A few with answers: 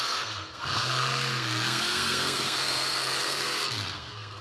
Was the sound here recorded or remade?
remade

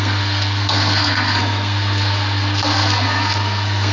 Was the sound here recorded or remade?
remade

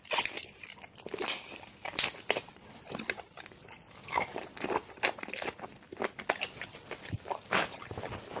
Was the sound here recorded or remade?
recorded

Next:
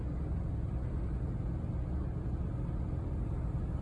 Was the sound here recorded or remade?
recorded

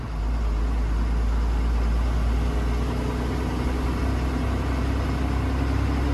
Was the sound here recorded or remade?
recorded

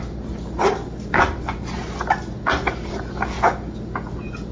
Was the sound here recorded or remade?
recorded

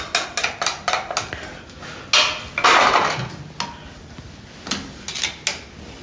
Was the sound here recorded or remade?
recorded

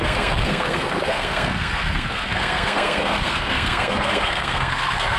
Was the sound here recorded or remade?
remade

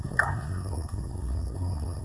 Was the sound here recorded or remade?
remade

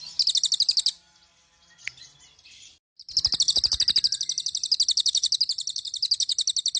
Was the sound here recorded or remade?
recorded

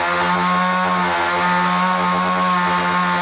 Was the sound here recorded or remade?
recorded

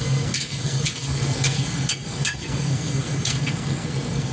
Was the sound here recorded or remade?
remade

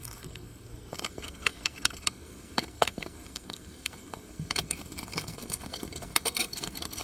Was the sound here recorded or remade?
remade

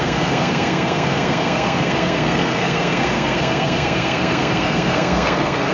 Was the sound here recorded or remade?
remade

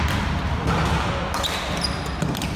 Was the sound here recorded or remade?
recorded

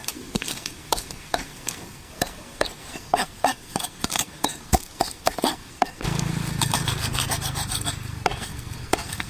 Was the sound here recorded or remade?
remade